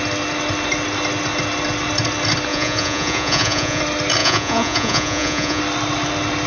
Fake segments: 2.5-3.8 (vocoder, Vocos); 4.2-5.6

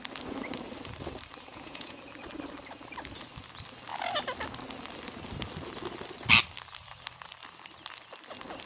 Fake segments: 1.5-2.0 (vocoder, Vocos)

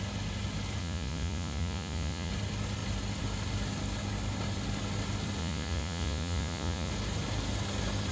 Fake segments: 0.8-2.3 (vocoder, Vocos); 5.4-6.9

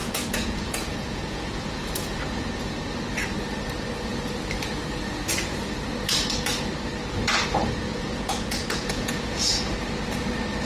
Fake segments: 0.0-2.6 (vocoder, Vocos); 7.9-9.7

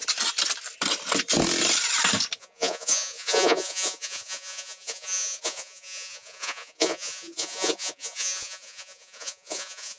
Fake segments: 2.4-10.0 (vocoder, Vocos)

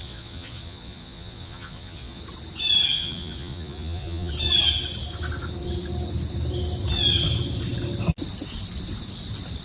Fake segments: 0.0-2.2 (vocoder, Vocos); 2.9-4.3